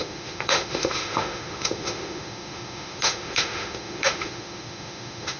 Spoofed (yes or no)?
yes